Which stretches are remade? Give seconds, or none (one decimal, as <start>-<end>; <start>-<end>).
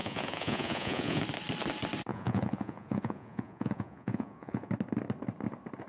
0.0-1.2; 2.1-4.7